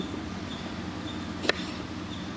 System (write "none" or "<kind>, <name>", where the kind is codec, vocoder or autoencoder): none